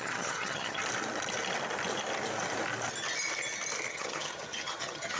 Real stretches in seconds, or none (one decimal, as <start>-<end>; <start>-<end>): 0.8-3.9